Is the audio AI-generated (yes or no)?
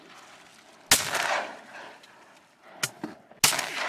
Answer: no